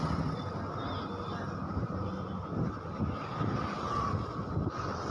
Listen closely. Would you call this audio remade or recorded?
recorded